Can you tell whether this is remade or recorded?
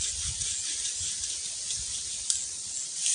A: recorded